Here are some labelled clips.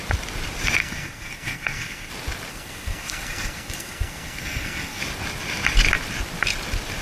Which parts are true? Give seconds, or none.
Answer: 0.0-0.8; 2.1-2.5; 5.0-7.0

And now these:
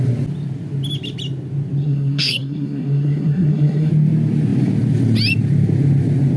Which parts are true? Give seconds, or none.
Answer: 0.0-1.8; 3.9-6.4

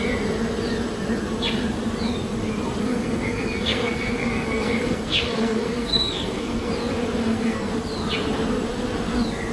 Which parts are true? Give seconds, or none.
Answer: 0.0-2.8; 6.7-7.2; 7.7-9.5

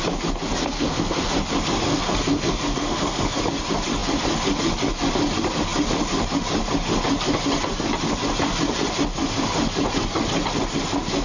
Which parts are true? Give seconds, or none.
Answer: 0.0-0.6; 1.3-1.9; 3.4-11.2

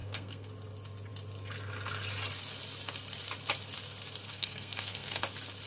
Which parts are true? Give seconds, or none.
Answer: 0.5-4.3; 5.2-5.7

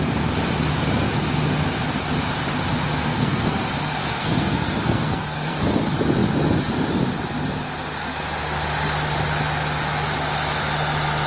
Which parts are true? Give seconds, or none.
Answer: 0.0-3.1; 3.6-4.0; 5.8-11.3

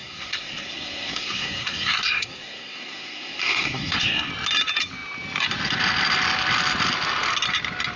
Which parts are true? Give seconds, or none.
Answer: 4.3-8.0

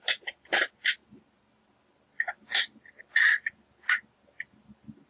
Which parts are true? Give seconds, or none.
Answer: 0.0-5.1